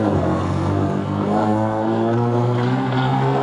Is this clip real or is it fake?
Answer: fake